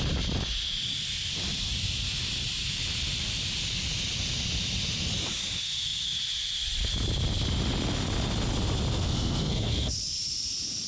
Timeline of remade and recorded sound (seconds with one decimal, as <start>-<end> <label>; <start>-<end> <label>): 0.0-8.9 recorded; 8.9-9.9 remade; 9.9-10.9 recorded